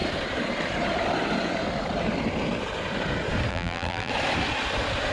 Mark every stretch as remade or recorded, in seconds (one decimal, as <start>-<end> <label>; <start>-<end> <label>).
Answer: 0.0-3.5 recorded; 3.5-4.1 remade; 4.1-5.1 recorded